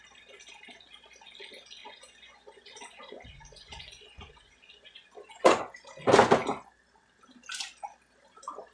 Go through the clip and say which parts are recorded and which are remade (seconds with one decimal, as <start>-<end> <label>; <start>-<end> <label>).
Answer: 0.0-1.8 recorded; 1.8-5.6 remade; 5.6-8.7 recorded